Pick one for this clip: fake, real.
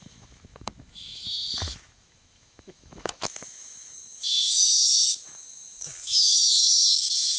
fake